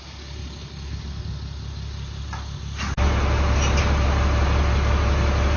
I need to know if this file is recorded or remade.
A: recorded